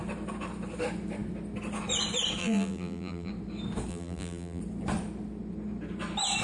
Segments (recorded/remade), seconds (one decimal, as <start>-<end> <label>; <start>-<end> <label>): 0.0-2.4 recorded; 2.4-3.3 remade; 3.3-3.9 recorded; 3.9-4.6 remade; 4.6-6.4 recorded